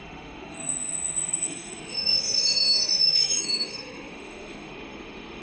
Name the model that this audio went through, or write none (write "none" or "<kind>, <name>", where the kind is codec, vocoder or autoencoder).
autoencoder, DAC-VAE